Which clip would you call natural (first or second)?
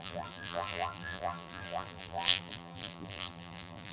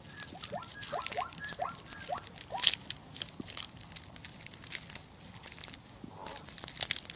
second